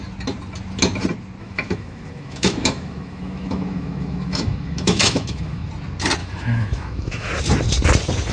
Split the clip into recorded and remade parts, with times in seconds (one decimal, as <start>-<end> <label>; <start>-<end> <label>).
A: 0.0-1.4 recorded; 1.4-5.7 remade; 5.7-6.2 recorded; 6.2-7.3 remade; 7.3-8.3 recorded